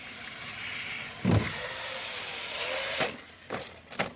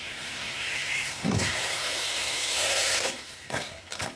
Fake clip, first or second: second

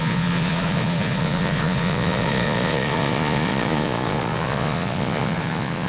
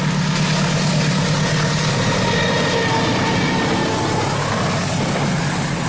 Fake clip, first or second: first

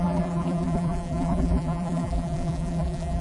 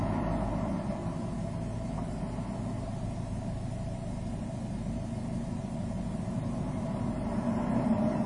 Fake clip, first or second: first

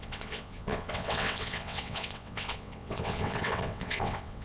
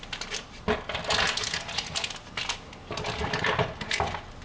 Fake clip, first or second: first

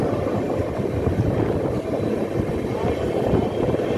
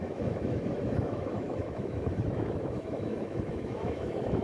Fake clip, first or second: second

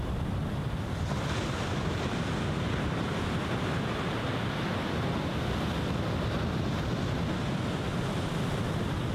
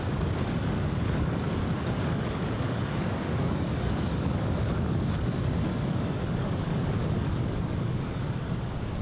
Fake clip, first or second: second